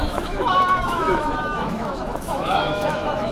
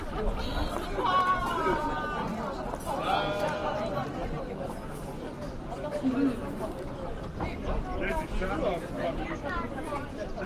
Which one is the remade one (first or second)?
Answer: first